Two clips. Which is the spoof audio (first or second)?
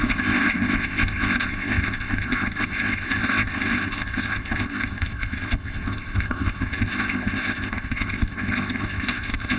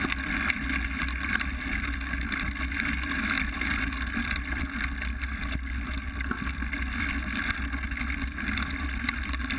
first